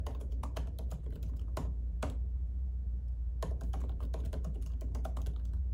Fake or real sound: fake